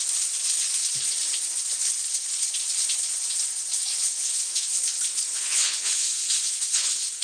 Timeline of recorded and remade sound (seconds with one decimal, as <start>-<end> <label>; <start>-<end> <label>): 0.0-3.9 recorded; 3.9-4.8 remade; 4.8-5.3 recorded; 5.3-7.2 remade